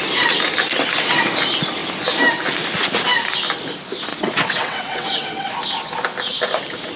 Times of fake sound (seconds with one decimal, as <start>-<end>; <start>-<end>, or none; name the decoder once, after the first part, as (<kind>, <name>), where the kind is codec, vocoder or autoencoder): 4.1-5.5 (vocoder, WaveNeXt)